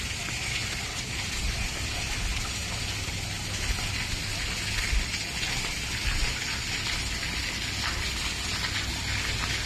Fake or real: real